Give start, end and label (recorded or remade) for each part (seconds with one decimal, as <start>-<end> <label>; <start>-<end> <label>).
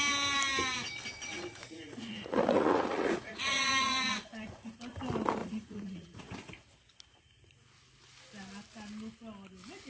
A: 0.0-1.3 recorded; 1.3-4.8 remade; 4.8-5.4 recorded; 5.4-6.2 remade; 6.2-9.9 recorded